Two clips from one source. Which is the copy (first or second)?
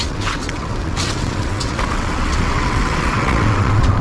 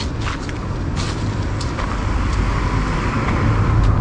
first